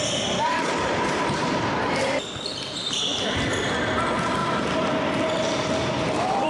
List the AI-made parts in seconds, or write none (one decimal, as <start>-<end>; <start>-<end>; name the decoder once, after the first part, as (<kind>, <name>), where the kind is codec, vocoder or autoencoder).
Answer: 4.4-6.5 (vocoder, BigVGAN v2)